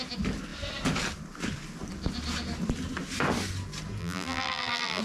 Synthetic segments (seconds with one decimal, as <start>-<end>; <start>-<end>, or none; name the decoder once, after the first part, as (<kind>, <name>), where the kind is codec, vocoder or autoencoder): 4.0-5.0 (vocoder, BigVGAN v2)